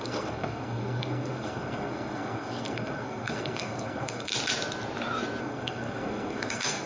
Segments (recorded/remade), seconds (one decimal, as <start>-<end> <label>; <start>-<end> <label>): 0.0-4.3 remade; 4.3-5.4 recorded; 5.4-6.9 remade